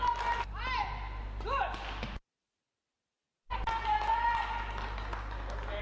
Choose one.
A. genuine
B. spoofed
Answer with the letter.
A